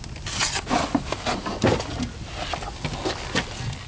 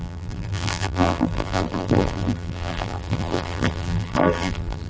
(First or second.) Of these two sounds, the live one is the first